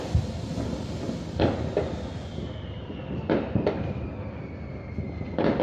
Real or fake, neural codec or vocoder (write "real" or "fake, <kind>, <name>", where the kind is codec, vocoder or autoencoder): real